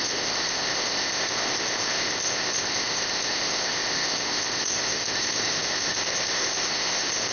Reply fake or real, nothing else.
fake